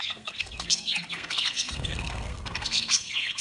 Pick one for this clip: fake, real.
fake